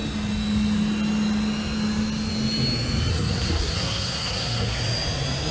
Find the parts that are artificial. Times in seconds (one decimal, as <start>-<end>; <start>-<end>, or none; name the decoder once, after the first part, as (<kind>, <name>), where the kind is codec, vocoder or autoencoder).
3.1-4.8 (codec, SNAC)